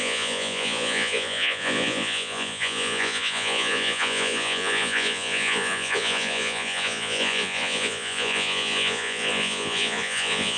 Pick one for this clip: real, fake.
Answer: fake